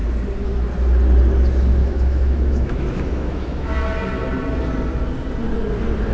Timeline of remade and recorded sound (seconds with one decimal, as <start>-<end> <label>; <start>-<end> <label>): 0.0-1.8 recorded; 1.8-3.7 remade; 3.7-6.1 recorded